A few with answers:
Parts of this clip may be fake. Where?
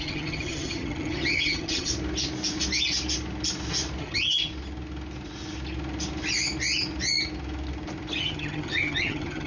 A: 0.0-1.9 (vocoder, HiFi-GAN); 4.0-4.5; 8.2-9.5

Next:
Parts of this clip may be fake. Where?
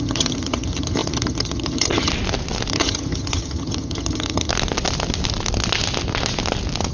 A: 0.0-2.1 (vocoder, HiFi-GAN); 2.7-4.5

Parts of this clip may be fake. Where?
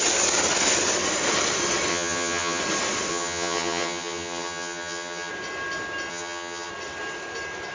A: 1.9-2.6 (vocoder, HiFi-GAN); 3.1-5.3; 6.1-6.7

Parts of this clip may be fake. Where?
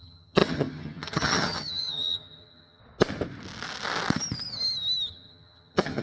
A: 0.0-2.8 (vocoder, HiFi-GAN); 5.1-6.0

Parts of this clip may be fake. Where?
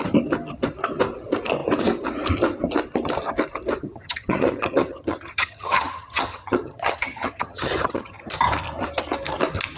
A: 3.8-8.2 (vocoder, HiFi-GAN)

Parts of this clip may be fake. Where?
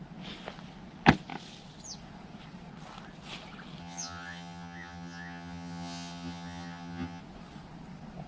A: 3.8-7.2 (vocoder, HiFi-GAN)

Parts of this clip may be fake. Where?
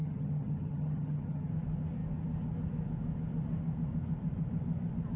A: 0.0-1.5 (vocoder, HiFi-GAN)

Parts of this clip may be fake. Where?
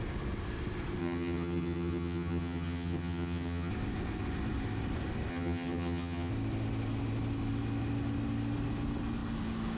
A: 1.0-3.7 (vocoder, HiFi-GAN); 5.3-6.3